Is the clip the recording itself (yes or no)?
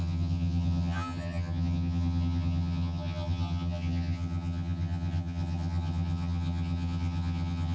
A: no